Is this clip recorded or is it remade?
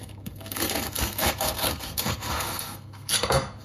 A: remade